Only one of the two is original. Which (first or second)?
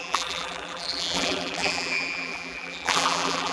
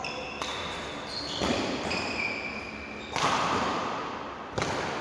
second